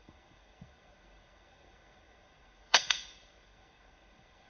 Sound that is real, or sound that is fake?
fake